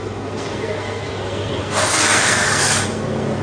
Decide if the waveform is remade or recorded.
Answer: remade